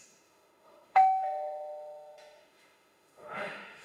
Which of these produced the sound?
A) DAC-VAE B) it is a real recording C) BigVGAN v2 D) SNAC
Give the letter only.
A